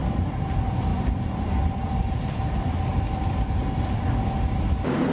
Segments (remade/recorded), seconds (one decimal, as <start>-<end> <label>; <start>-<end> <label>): 0.0-0.5 remade; 0.5-0.9 recorded; 0.9-4.0 remade; 4.0-5.1 recorded